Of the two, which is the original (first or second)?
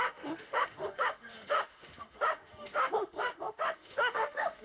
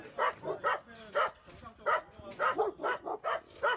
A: second